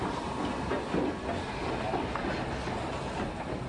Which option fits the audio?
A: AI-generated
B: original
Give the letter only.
B